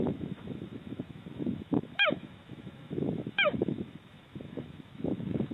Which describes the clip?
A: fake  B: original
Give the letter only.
A